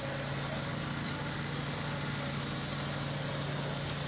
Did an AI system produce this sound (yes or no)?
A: no